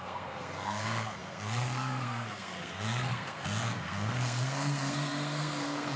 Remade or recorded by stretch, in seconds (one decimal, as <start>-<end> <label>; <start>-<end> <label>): 0.0-6.0 remade